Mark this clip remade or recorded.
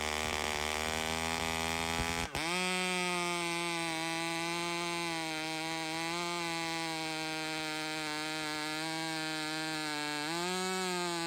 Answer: recorded